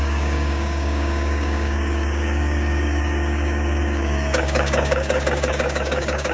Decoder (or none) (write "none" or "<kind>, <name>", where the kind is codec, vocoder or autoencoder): codec, DAC